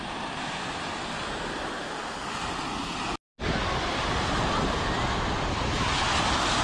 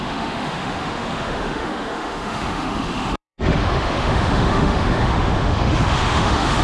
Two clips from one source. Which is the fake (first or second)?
second